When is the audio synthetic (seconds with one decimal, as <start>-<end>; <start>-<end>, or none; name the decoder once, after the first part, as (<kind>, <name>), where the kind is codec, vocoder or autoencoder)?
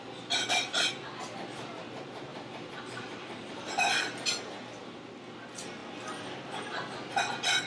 2.3-3.9 (vocoder, BigVGAN v2); 5.8-6.5